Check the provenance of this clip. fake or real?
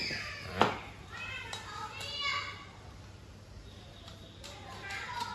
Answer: real